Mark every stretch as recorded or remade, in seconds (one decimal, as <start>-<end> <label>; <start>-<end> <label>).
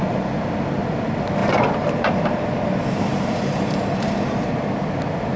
0.0-1.4 recorded; 1.4-4.3 remade; 4.3-5.4 recorded